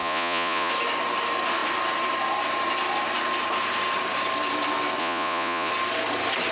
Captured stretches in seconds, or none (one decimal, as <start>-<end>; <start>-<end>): 0.7-5.0; 5.7-6.5